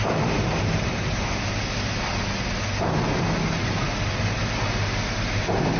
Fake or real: real